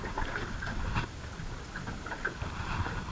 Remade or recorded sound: recorded